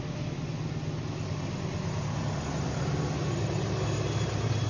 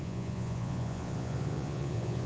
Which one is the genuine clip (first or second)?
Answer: first